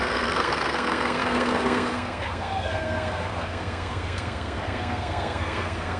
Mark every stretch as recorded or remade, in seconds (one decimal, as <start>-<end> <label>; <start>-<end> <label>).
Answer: 0.0-6.0 remade